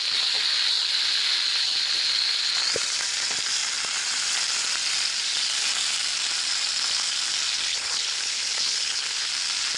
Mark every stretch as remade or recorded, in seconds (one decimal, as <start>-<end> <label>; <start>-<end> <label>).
0.0-7.7 recorded; 7.7-9.3 remade; 9.3-9.8 recorded